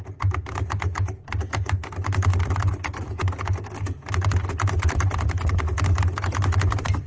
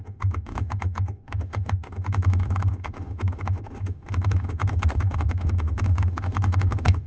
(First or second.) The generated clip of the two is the second